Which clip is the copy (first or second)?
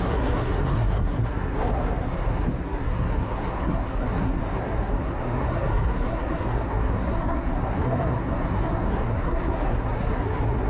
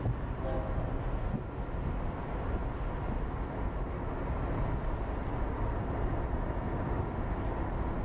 first